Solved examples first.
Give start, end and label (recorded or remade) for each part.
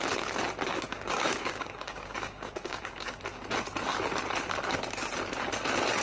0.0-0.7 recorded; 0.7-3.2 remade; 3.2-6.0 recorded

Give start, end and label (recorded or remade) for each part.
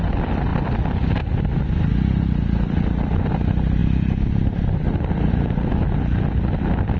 0.0-7.0 recorded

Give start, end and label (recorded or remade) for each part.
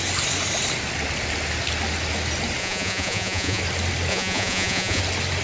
0.0-2.6 recorded; 2.6-3.6 remade; 3.6-4.1 recorded; 4.1-5.0 remade; 5.0-5.4 recorded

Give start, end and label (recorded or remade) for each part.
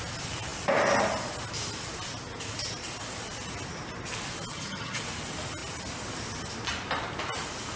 0.0-4.5 recorded; 4.5-5.0 remade; 5.0-7.8 recorded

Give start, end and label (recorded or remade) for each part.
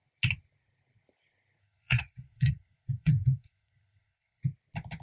0.0-1.6 recorded; 1.6-4.4 remade; 4.4-5.0 recorded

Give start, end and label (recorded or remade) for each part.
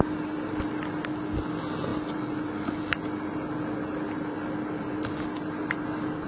0.0-6.3 recorded